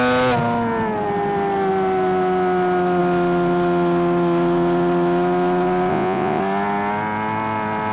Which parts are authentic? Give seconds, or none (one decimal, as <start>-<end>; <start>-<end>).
0.0-5.9; 6.4-7.9